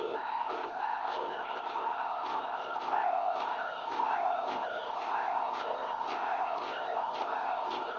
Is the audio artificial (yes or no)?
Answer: yes